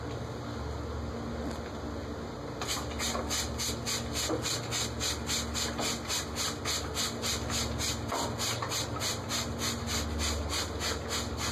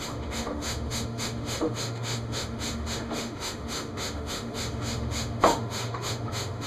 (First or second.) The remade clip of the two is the second